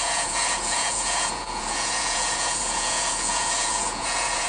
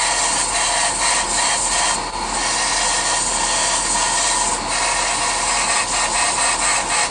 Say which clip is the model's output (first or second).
first